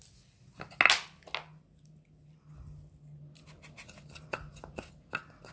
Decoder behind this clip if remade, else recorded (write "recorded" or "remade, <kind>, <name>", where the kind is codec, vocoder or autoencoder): recorded